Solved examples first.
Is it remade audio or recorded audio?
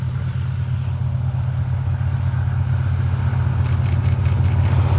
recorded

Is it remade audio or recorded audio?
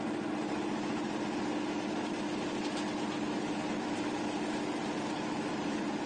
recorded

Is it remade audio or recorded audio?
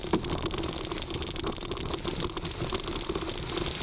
recorded